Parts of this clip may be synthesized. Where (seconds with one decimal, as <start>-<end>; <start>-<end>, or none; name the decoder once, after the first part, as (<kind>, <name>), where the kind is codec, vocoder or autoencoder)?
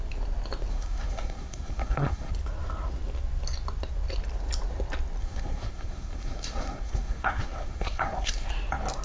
0.7-2.3 (codec, SNAC); 5.2-8.5